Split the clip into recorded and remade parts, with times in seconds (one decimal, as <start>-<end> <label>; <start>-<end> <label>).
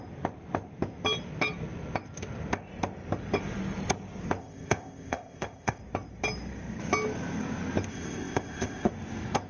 0.0-4.4 recorded; 4.4-5.8 remade; 5.8-7.9 recorded; 7.9-8.9 remade; 8.9-9.5 recorded